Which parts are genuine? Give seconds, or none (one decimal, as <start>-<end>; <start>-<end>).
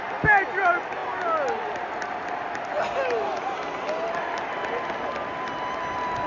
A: 0.0-6.3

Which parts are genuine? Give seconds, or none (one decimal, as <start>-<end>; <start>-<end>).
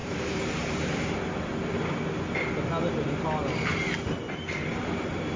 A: 1.5-4.7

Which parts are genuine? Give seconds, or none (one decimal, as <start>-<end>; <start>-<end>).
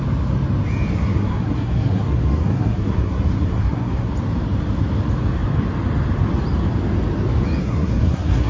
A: 0.0-0.9; 4.1-7.6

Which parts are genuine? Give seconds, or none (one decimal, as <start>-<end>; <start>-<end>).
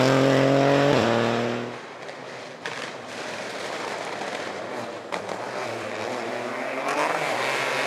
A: 0.0-2.2; 6.3-7.9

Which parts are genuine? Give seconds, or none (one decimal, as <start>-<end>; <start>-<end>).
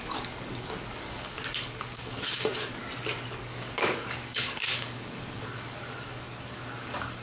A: 2.8-3.4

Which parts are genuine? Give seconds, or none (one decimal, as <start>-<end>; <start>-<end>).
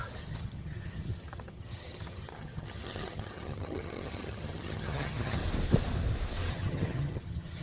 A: 5.4-6.5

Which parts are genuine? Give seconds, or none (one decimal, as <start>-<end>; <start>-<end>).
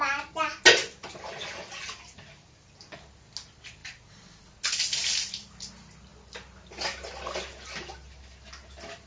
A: 0.0-9.1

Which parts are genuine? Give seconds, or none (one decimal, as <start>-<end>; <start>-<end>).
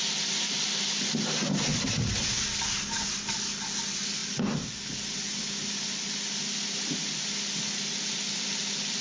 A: 0.0-9.0